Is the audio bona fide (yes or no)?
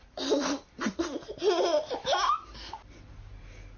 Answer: yes